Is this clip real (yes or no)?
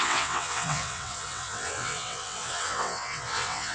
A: no